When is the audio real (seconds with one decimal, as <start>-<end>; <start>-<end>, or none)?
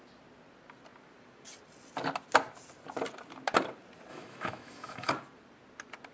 0.0-4.1; 5.1-6.1